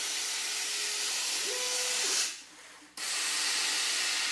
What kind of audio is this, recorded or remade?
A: recorded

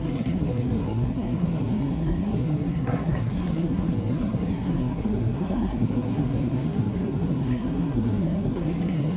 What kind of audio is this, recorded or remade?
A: remade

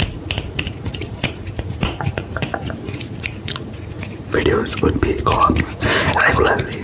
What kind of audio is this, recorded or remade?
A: remade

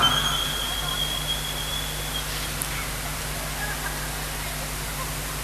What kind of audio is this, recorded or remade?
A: recorded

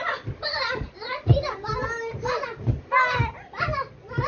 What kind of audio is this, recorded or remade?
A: recorded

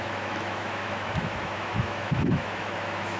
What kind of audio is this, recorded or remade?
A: remade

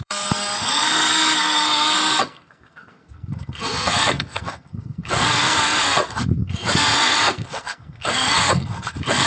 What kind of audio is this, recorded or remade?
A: remade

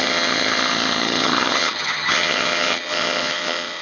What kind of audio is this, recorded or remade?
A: remade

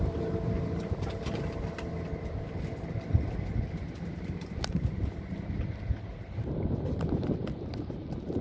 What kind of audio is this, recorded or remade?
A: recorded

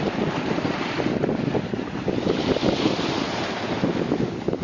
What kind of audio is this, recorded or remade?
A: recorded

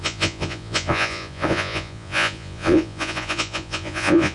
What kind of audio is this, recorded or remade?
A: remade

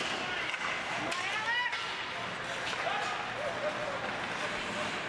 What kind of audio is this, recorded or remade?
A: recorded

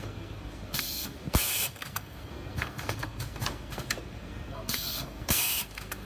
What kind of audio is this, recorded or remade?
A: remade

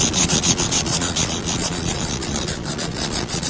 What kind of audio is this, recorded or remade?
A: remade